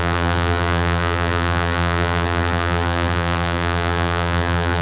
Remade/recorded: remade